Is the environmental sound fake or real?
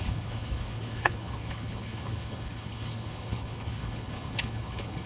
fake